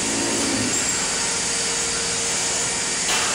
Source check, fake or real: real